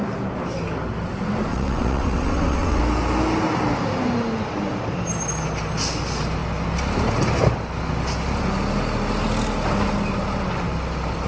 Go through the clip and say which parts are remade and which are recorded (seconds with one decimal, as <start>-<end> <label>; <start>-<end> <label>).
0.0-1.5 recorded; 1.5-2.8 remade; 2.8-11.3 recorded